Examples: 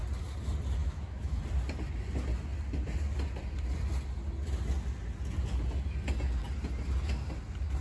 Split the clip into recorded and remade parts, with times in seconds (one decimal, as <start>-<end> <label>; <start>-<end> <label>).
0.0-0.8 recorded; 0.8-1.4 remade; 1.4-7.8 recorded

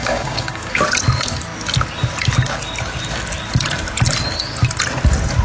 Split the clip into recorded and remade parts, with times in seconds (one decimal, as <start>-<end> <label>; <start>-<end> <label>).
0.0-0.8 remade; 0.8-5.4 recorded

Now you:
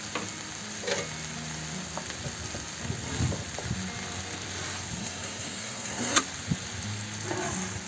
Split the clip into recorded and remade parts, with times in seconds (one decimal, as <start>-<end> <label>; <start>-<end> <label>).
0.0-5.0 recorded; 5.0-6.2 remade; 6.2-7.9 recorded

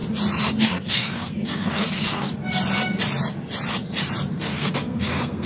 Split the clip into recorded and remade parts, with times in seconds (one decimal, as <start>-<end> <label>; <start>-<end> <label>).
0.0-0.6 recorded; 0.6-2.3 remade; 2.3-4.3 recorded; 4.3-5.5 remade